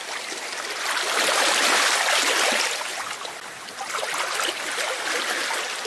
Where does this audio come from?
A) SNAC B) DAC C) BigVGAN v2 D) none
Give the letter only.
D